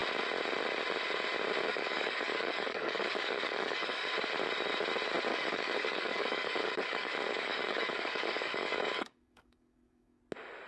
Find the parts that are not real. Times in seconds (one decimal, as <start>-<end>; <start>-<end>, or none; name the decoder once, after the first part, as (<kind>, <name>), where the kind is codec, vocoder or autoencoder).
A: 1.7-4.1 (codec, DAC); 5.3-10.2